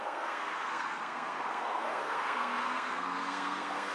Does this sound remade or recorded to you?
remade